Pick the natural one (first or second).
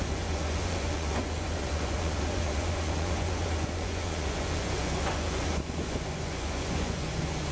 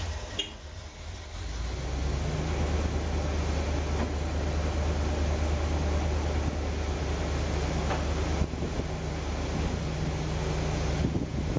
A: second